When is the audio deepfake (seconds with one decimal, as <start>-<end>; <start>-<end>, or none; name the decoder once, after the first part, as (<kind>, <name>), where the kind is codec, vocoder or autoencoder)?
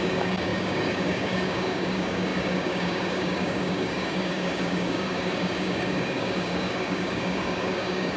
0.0-8.2 (codec, DAC)